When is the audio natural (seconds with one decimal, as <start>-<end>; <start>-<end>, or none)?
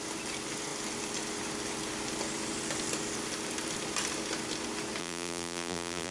0.0-5.0